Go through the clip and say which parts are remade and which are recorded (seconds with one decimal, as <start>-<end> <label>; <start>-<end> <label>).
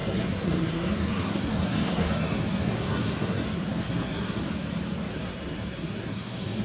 0.0-4.4 remade; 4.4-5.1 recorded; 5.1-6.6 remade